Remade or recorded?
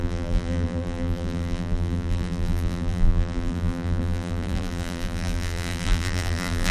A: remade